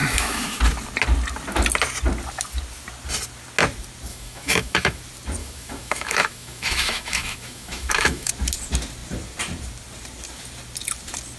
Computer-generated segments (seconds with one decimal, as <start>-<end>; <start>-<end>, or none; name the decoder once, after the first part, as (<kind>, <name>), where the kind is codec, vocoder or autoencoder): 0.0-0.6 (autoencoder, DAC-VAE); 4.1-5.0; 5.4-8.3